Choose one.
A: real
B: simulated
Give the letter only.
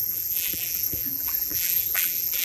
B